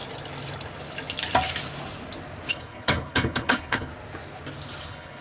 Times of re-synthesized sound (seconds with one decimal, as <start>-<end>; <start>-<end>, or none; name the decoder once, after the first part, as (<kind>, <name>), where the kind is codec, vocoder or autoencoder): 2.5-3.9 (codec, HILCodec); 4.8-5.2